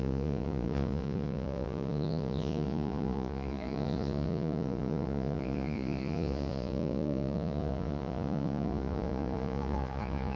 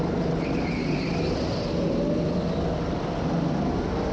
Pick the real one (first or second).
second